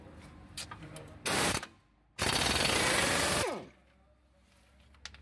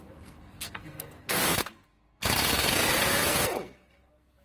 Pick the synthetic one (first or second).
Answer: second